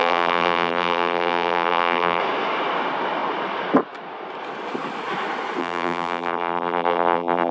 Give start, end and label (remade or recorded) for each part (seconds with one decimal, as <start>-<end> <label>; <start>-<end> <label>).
0.0-2.2 remade; 2.2-5.6 recorded; 5.6-7.5 remade